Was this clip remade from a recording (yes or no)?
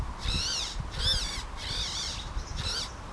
no